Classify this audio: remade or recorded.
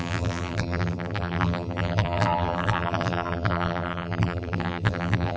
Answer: remade